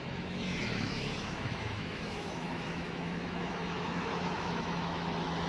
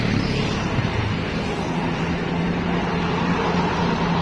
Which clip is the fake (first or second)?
first